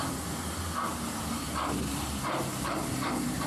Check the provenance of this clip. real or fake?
real